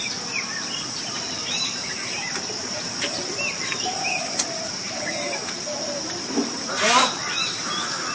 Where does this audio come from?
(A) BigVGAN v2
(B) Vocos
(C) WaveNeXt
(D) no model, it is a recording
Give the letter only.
A